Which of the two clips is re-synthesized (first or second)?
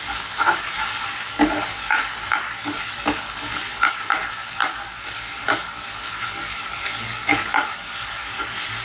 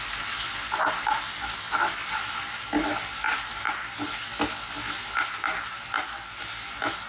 first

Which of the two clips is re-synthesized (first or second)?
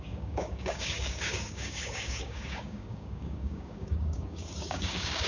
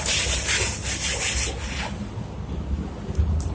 first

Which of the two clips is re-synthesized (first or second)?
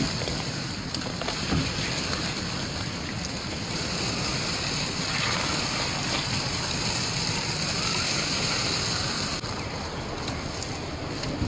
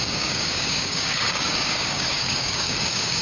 second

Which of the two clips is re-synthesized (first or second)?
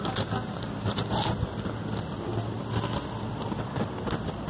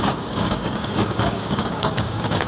second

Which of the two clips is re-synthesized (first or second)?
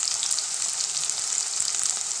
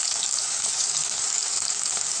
second